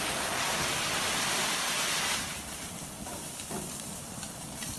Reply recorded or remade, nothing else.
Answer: remade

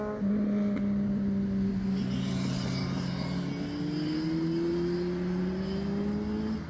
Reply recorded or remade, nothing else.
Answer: recorded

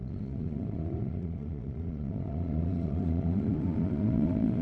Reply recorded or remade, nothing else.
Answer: remade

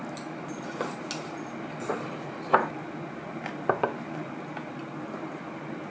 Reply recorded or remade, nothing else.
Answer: recorded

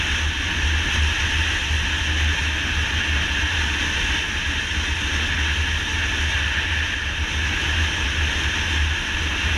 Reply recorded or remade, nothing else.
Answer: recorded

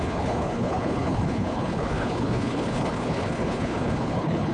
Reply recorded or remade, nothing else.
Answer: remade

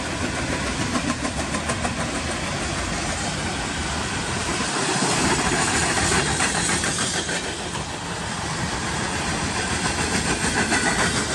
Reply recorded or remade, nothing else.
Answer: recorded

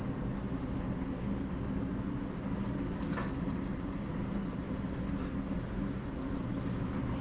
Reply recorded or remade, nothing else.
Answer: recorded